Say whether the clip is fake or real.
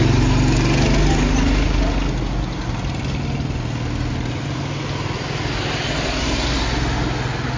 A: real